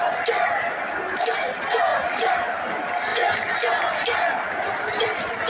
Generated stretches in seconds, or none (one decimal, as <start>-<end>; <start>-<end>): 1.9-2.6